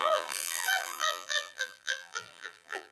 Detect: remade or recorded remade